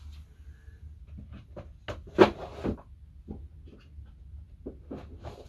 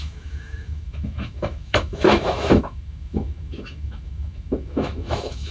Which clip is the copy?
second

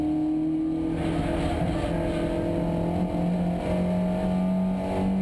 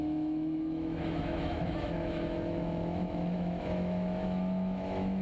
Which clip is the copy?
second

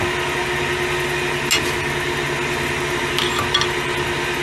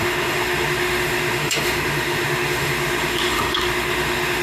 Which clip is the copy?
second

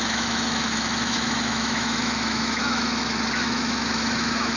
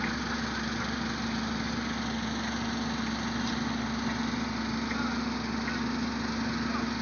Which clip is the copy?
first